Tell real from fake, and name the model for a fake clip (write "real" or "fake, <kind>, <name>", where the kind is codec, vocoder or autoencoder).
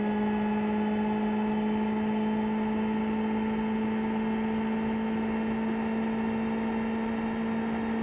real